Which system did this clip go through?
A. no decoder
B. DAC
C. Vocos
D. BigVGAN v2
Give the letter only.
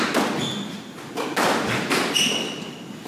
A